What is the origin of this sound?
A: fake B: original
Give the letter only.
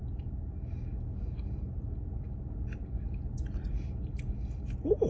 B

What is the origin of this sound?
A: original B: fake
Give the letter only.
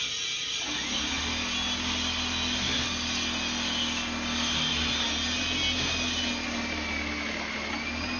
A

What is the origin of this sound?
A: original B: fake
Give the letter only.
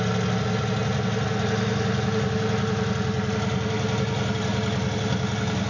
A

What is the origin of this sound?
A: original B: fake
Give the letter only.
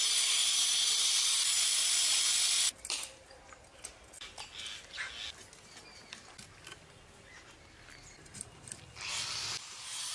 A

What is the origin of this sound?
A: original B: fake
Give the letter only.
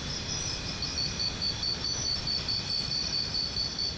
A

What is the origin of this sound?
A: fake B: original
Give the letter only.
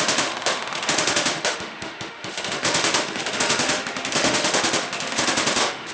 A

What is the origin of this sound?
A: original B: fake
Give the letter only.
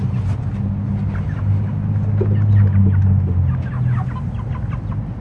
A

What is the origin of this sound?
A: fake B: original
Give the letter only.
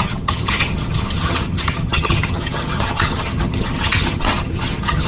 A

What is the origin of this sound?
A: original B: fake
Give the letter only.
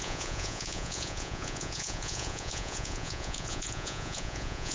B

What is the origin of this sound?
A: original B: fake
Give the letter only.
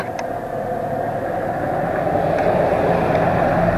A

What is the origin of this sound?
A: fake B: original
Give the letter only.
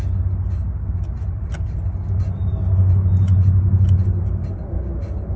B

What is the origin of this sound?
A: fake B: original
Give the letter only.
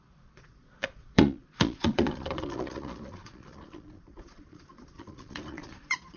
A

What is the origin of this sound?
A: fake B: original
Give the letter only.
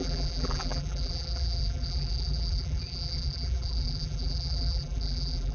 A